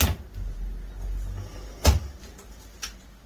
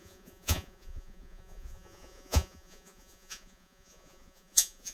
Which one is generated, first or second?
second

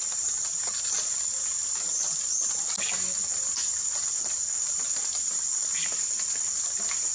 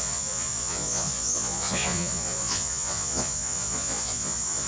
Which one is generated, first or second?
second